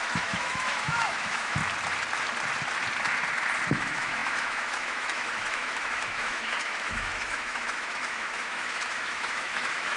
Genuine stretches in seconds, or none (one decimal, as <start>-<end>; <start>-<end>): 1.6-3.7